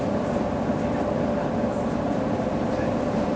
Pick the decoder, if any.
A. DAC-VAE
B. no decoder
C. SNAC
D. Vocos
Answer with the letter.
B